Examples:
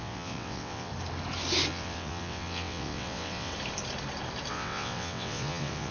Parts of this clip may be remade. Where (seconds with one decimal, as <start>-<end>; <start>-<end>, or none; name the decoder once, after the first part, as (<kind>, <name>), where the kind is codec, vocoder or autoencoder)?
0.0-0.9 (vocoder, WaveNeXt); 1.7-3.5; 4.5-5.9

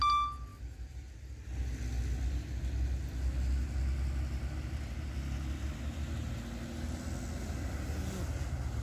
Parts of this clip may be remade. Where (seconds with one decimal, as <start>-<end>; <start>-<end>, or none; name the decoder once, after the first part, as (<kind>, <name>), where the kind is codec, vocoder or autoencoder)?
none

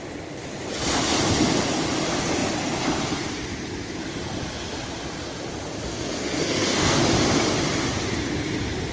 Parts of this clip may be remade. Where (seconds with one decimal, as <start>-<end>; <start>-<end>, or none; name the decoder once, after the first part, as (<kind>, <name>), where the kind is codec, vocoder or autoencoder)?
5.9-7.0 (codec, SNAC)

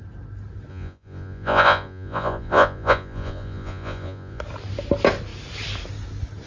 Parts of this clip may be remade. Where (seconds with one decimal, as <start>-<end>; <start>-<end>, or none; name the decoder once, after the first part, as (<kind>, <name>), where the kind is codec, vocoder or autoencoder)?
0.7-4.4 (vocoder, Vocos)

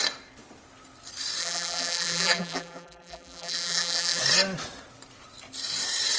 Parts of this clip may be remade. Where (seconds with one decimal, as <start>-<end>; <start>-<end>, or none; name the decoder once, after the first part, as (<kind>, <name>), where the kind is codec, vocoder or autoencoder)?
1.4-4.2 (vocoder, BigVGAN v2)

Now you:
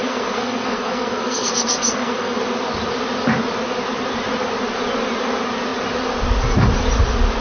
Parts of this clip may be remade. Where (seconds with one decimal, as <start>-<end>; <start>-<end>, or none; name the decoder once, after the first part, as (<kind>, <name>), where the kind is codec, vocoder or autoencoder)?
0.0-2.4 (codec, SNAC)

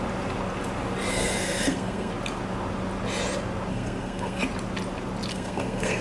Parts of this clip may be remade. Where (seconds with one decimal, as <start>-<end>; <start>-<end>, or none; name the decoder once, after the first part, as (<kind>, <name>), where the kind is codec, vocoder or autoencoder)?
1.1-2.1 (codec, SNAC); 3.7-4.4; 5.3-6.0